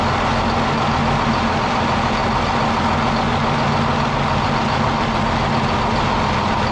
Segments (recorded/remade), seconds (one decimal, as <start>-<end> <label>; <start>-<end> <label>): 0.0-6.7 recorded